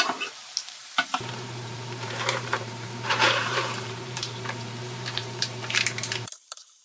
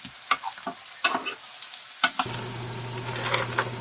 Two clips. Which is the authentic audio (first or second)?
second